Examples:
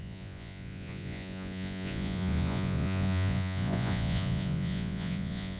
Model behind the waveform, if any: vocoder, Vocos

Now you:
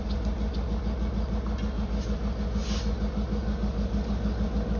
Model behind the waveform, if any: none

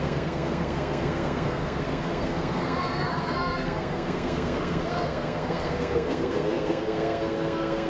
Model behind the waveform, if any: codec, SNAC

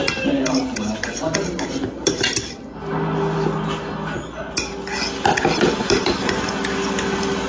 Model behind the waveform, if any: none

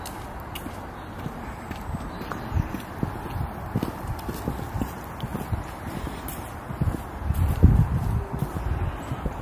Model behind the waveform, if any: none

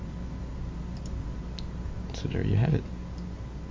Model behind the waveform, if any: none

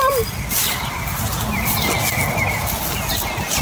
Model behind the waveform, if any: none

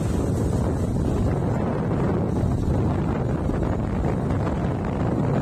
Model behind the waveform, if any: none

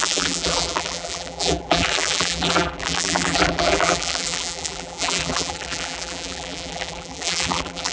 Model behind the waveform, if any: vocoder, BigVGAN v2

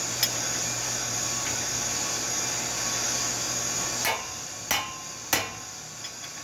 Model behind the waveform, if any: none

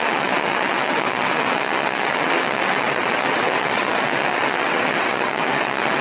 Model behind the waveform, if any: vocoder, WaveNeXt